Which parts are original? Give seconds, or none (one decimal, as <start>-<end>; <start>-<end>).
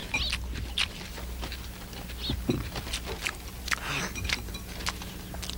0.0-5.6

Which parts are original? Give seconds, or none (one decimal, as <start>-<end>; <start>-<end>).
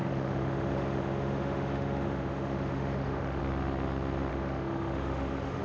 3.4-4.3